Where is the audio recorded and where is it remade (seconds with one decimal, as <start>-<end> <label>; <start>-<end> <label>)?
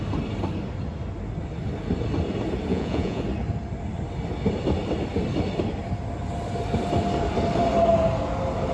0.0-2.7 recorded; 2.7-3.2 remade; 3.2-8.7 recorded